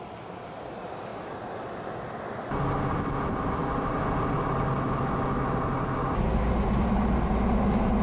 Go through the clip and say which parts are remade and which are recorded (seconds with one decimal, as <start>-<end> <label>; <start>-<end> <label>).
0.0-8.0 recorded